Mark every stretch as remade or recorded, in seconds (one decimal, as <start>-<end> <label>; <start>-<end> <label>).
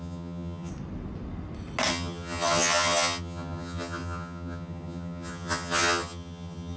0.0-0.7 remade; 0.7-1.9 recorded; 1.9-6.8 remade